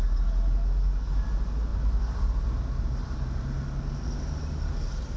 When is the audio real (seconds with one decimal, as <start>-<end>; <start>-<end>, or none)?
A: 0.0-5.2